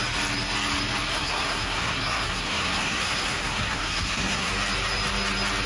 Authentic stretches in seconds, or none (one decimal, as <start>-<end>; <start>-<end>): 0.0-1.1; 4.5-5.7